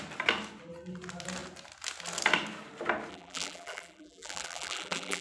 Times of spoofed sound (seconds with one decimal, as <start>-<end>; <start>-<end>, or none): 3.1-5.2